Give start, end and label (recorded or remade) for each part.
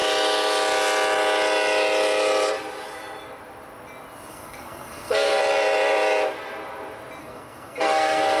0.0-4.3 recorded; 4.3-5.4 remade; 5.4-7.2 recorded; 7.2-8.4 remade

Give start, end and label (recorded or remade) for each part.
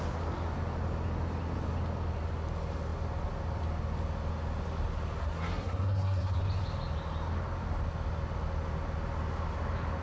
0.0-5.2 recorded; 5.2-6.4 remade; 6.4-10.0 recorded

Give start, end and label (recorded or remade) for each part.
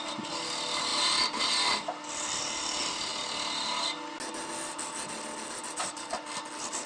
0.0-6.9 recorded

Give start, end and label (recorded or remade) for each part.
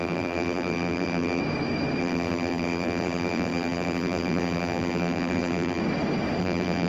0.0-1.4 remade; 1.4-2.0 recorded; 2.0-5.8 remade; 5.8-6.4 recorded; 6.4-6.9 remade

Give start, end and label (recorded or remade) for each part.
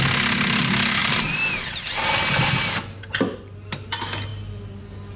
0.0-5.2 recorded